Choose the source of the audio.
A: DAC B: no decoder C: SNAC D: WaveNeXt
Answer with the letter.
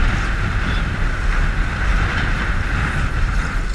B